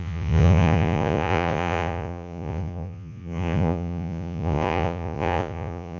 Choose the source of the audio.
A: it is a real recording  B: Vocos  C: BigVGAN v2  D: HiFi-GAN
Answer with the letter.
B